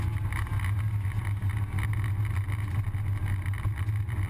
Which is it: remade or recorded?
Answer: recorded